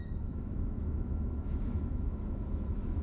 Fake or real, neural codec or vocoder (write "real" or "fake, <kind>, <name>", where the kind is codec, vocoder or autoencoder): fake, autoencoder, DAC-VAE